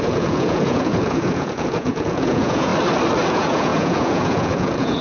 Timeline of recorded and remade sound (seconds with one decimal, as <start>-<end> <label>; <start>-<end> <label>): 0.0-2.7 remade; 2.7-3.3 recorded; 3.3-5.0 remade